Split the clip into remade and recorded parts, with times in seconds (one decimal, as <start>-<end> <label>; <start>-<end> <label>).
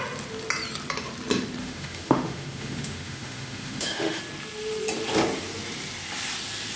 0.0-1.6 recorded; 1.6-4.2 remade; 4.2-6.8 recorded